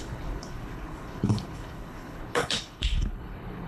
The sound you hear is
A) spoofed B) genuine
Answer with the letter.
A